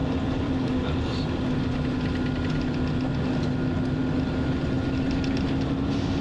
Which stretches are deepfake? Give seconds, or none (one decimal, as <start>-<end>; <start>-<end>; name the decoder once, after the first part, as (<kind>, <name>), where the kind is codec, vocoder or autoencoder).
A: none